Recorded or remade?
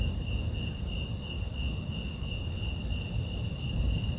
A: recorded